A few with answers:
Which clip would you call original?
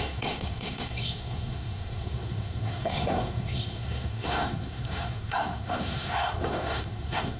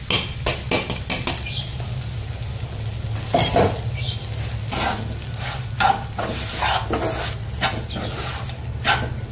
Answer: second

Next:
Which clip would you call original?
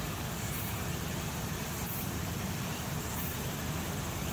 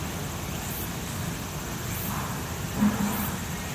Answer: second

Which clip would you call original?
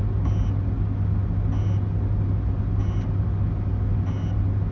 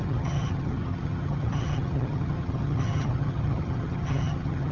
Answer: first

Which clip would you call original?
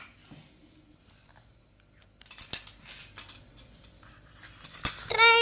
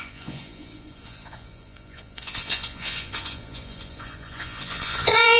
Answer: first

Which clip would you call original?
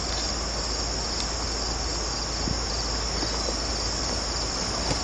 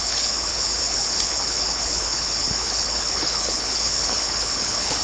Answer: first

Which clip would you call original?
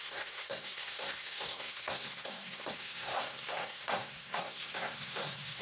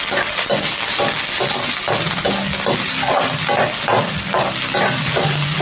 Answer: second